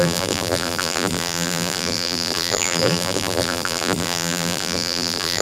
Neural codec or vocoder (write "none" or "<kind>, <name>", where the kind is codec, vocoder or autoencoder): vocoder, BigVGAN v2